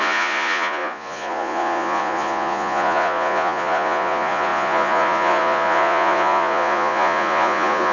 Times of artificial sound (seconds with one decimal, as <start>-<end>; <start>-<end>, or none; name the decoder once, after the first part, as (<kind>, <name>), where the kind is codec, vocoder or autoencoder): 0.0-7.9 (vocoder, Vocos)